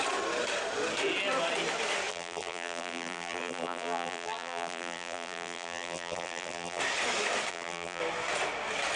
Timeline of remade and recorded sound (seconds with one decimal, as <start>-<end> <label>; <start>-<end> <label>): 0.0-2.1 recorded; 2.1-6.8 remade; 6.8-7.5 recorded; 7.5-8.0 remade; 8.0-9.0 recorded